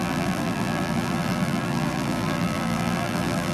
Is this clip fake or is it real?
fake